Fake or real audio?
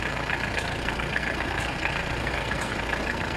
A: fake